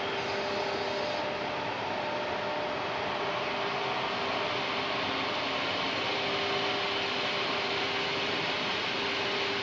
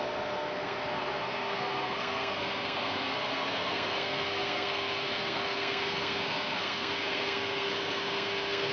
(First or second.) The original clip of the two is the first